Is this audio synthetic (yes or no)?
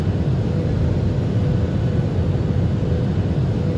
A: no